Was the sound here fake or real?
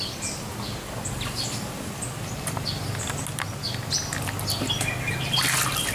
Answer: real